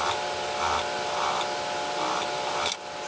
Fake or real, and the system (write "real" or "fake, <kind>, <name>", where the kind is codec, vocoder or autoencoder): real